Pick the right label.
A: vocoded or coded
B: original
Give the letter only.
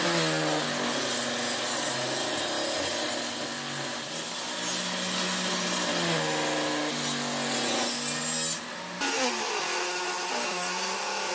B